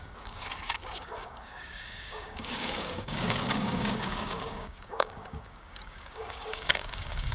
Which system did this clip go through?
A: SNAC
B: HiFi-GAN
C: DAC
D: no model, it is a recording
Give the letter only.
C